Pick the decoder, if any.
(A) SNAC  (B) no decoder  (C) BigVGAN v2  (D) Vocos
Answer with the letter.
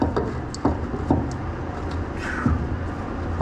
B